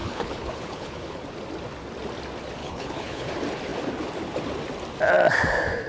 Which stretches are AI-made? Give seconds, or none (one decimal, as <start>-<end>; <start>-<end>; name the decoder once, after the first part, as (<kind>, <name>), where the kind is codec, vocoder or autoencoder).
0.0-1.2 (codec, HILCodec); 2.6-3.3